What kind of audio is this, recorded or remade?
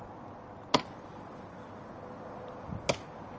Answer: recorded